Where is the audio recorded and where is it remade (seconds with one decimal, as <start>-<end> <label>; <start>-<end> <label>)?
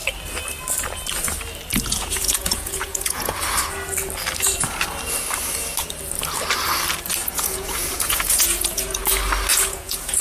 0.0-1.8 recorded; 1.8-3.4 remade; 3.4-7.2 recorded; 7.2-9.0 remade; 9.0-9.5 recorded; 9.5-10.2 remade